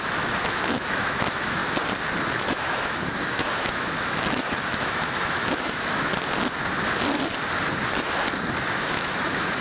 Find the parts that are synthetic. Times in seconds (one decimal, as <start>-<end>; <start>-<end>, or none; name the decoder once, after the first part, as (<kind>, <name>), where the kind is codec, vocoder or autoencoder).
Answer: 0.0-1.6 (autoencoder, DAC-VAE); 2.4-6.1; 8.7-9.6